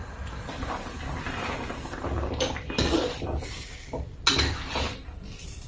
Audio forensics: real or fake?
real